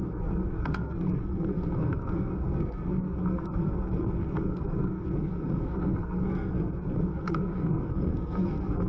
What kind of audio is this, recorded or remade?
remade